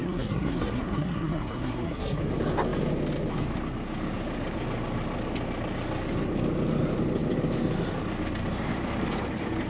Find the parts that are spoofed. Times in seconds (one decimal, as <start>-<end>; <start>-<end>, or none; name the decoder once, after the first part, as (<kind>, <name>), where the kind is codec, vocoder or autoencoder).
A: 0.0-2.2 (codec, SNAC)